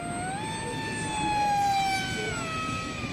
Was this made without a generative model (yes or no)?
yes